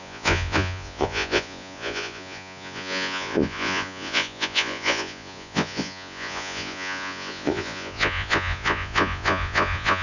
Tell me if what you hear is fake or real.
fake